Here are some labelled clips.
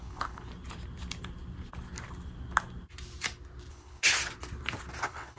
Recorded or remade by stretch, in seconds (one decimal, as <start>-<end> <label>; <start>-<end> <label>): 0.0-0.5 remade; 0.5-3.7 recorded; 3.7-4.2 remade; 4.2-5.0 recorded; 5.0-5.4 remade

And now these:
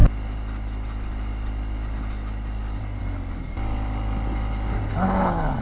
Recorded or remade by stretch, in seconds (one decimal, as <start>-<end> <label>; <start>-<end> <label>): 0.0-4.9 recorded; 4.9-5.6 remade

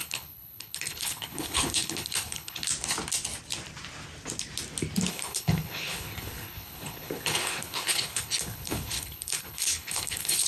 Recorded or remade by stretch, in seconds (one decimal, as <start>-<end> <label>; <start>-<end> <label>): 0.0-2.7 remade; 2.7-5.1 recorded; 5.1-10.5 remade

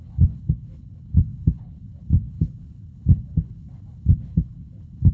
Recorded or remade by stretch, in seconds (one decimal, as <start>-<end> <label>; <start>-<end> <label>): 0.0-5.1 remade

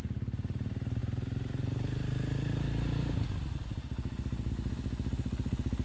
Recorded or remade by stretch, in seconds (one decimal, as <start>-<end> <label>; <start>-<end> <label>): 0.0-5.8 recorded

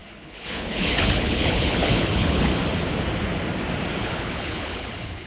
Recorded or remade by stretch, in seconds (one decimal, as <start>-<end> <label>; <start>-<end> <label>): 0.0-2.5 remade; 2.5-4.0 recorded; 4.0-5.3 remade